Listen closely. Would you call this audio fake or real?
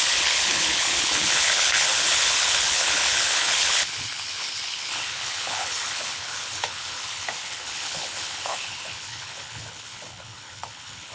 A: fake